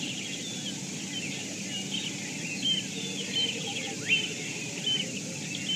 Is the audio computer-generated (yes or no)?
no